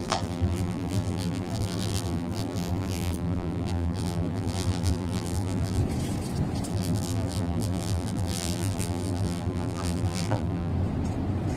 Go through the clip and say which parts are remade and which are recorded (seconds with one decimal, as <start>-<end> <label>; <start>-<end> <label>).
0.0-5.8 remade; 5.8-6.7 recorded; 6.7-10.7 remade; 10.7-11.6 recorded